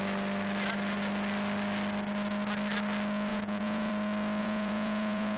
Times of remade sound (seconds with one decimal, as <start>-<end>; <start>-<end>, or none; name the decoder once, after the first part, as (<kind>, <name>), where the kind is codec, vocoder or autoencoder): 3.3-3.9 (vocoder, Vocos); 4.4-5.4